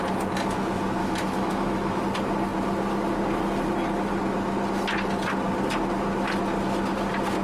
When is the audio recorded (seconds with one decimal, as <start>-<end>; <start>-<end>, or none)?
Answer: 0.0-1.0; 2.0-7.4